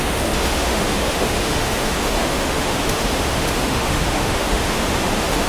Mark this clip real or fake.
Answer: fake